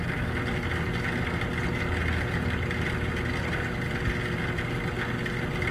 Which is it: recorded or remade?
recorded